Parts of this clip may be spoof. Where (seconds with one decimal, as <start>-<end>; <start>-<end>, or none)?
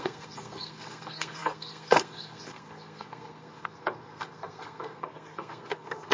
0.0-6.1